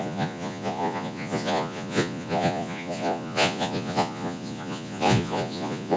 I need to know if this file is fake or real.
fake